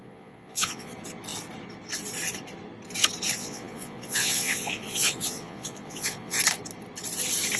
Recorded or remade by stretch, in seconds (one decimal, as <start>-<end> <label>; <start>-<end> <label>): 0.0-0.9 remade; 0.9-3.4 recorded; 3.4-6.4 remade; 6.4-7.6 recorded